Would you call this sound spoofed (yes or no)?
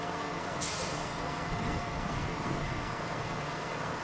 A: yes